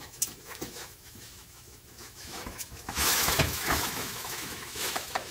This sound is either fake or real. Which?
fake